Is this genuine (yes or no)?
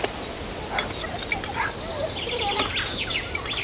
yes